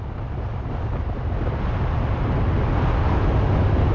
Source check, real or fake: real